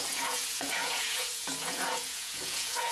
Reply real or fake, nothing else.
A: fake